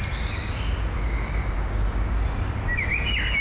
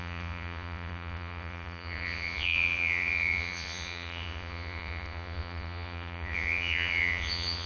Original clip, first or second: first